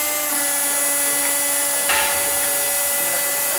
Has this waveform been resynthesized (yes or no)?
no